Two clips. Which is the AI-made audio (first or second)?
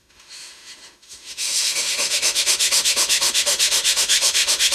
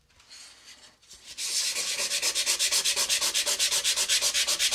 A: first